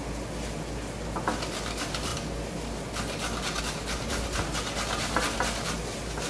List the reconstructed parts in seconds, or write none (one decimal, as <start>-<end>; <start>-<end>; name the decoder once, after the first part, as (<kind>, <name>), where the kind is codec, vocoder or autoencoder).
none